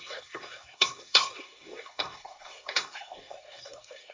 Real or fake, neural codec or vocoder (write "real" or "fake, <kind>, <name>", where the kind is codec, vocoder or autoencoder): fake, codec, SNAC